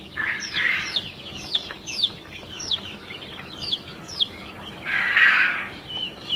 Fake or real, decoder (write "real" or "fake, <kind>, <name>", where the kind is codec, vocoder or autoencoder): fake, codec, DAC